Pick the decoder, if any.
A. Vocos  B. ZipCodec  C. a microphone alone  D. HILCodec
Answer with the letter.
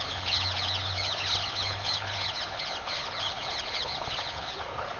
D